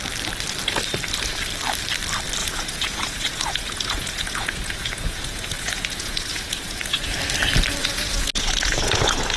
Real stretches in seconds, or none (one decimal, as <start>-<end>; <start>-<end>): 0.0-2.4; 7.2-7.8